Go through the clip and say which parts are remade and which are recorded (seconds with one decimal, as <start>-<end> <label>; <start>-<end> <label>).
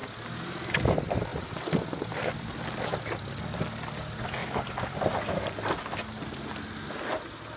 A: 0.0-1.3 recorded; 1.3-2.6 remade; 2.6-4.4 recorded; 4.4-5.1 remade; 5.1-7.6 recorded